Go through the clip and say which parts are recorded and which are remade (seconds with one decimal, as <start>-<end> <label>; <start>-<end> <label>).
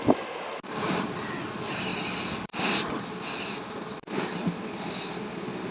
0.0-5.7 recorded